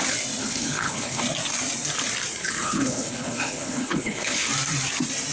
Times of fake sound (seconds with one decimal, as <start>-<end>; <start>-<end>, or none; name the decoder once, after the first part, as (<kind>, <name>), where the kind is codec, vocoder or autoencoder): 0.4-1.2 (codec, HILCodec); 2.4-4.5